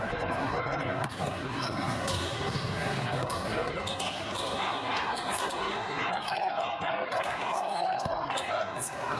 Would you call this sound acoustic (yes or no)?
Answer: no